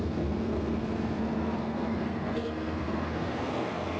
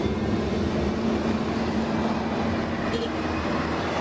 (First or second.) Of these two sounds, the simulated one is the first